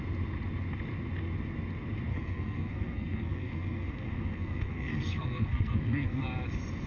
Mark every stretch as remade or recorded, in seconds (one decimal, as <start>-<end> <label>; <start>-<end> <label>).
0.0-2.1 recorded; 2.1-6.2 remade; 6.2-6.9 recorded